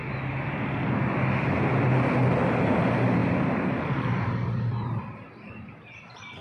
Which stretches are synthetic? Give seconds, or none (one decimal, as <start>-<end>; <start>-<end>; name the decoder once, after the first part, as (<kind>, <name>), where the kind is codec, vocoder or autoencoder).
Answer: 3.2-5.5 (vocoder, BigVGAN v2)